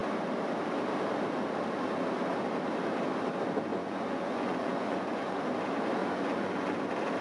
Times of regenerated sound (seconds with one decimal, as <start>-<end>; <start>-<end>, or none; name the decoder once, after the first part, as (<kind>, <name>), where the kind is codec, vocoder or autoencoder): 3.7-5.4 (vocoder, Vocos); 6.0-6.7